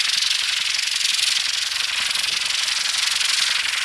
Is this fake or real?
real